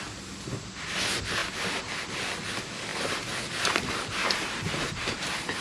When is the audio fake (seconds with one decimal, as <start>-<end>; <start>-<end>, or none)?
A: 4.2-5.6